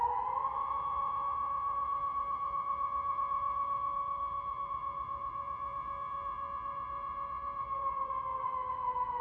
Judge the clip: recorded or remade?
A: remade